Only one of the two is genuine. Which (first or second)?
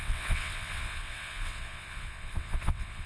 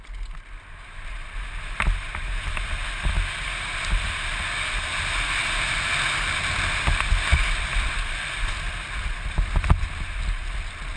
second